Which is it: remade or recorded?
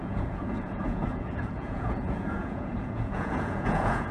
remade